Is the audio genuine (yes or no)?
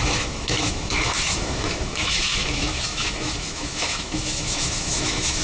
no